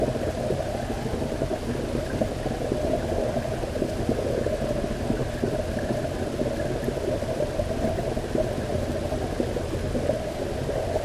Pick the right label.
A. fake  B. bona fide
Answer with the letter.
B